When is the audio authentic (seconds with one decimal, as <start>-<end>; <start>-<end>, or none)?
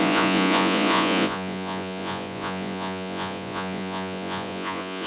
none